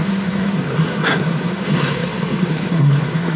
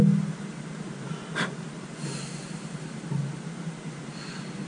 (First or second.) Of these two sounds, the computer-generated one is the first